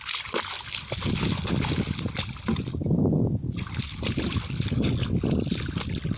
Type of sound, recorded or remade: recorded